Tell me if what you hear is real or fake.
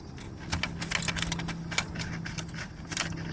real